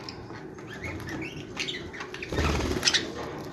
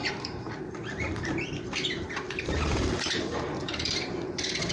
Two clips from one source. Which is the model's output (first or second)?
second